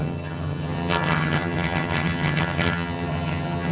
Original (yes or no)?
no